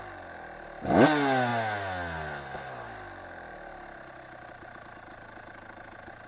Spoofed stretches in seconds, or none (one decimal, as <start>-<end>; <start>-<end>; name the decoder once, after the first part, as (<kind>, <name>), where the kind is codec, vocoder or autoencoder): none